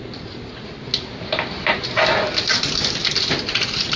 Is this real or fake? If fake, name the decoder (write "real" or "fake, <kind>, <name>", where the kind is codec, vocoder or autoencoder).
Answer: real